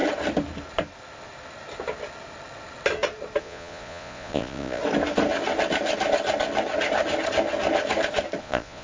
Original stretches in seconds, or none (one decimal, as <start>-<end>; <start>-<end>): 0.0-3.4; 4.8-8.4